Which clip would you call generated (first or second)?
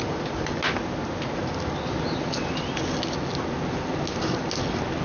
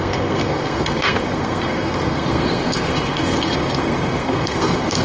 second